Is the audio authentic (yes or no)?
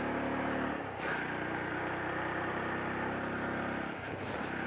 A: yes